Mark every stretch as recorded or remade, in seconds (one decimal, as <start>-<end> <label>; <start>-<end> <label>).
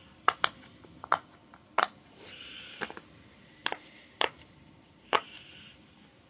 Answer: 0.0-1.4 recorded; 1.4-5.2 remade; 5.2-6.3 recorded